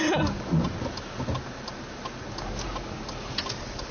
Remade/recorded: recorded